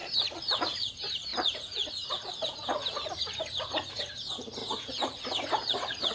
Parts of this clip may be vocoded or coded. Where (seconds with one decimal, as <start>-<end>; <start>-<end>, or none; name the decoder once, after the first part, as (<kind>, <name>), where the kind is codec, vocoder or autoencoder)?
0.0-0.9 (vocoder, Vocos); 1.3-4.0; 4.6-6.1